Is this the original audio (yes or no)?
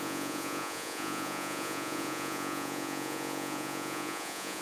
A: no